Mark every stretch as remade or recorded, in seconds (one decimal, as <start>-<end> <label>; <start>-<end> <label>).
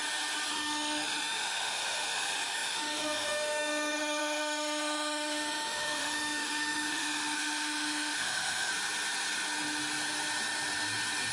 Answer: 0.0-0.5 recorded; 0.5-8.7 remade; 8.7-11.3 recorded